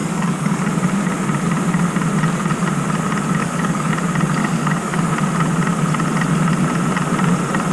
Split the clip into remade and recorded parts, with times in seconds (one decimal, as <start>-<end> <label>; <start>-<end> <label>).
0.0-0.6 remade; 0.6-3.4 recorded; 3.4-3.9 remade; 3.9-4.4 recorded; 4.4-5.1 remade; 5.1-7.7 recorded